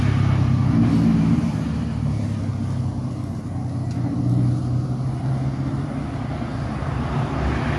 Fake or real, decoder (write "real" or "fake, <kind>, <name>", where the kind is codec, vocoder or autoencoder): real